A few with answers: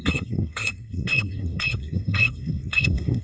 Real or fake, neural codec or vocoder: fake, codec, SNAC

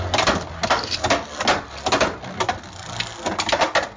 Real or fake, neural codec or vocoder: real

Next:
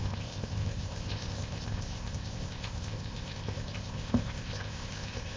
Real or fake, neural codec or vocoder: fake, codec, ZipCodec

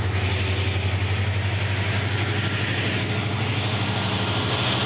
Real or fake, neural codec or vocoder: real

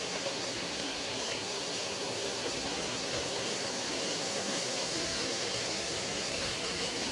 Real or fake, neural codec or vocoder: fake, codec, SNAC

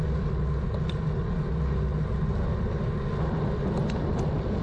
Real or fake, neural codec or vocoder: real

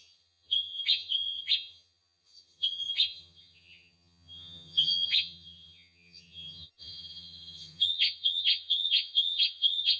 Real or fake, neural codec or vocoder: fake, vocoder, HiFi-GAN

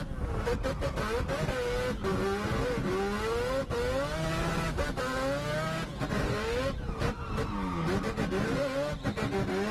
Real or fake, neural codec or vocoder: real